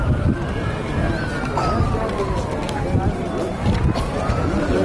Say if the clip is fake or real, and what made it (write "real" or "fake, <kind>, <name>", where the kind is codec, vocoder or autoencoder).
real